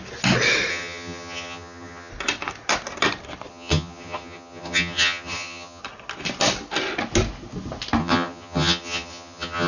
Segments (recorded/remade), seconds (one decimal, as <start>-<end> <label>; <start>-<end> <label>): 0.0-0.7 recorded; 0.7-2.1 remade; 2.1-3.5 recorded; 3.5-5.8 remade; 5.8-8.0 recorded; 8.0-9.7 remade